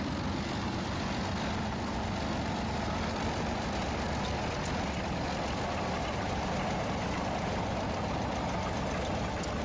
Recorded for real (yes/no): yes